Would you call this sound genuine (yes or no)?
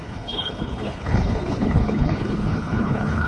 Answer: no